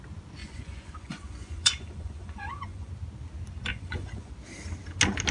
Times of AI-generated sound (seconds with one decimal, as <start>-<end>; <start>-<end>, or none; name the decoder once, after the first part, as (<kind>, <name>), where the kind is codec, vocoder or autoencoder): 0.4-2.9 (vocoder, Vocos); 3.7-4.3